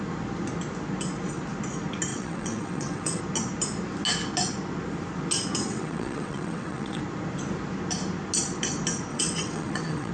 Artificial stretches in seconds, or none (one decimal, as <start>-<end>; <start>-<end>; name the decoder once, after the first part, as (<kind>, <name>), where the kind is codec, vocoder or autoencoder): 2.1-3.2 (vocoder, WaveNeXt); 5.6-7.0; 9.1-10.1